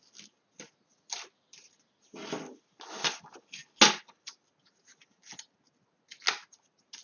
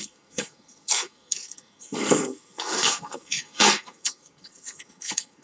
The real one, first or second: first